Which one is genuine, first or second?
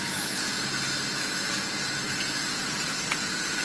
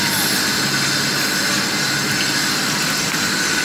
second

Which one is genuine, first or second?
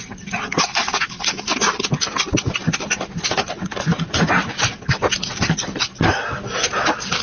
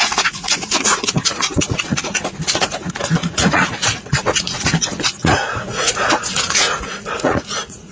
first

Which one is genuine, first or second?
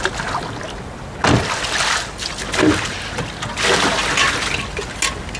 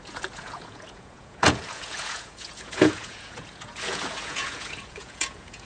first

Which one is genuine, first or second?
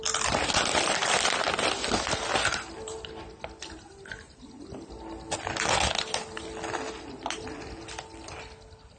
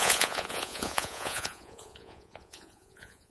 first